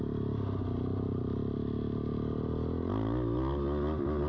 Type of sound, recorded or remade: recorded